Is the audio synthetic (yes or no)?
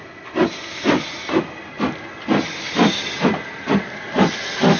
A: no